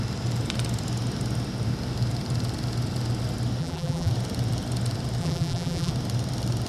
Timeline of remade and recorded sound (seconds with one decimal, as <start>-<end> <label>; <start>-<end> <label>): 0.0-3.6 recorded; 3.6-4.1 remade; 4.1-5.2 recorded; 5.2-5.9 remade; 5.9-6.7 recorded